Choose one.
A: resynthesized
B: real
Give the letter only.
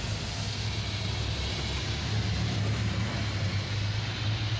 B